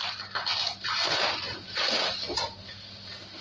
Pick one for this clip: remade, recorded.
recorded